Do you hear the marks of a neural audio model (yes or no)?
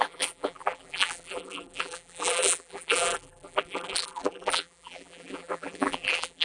yes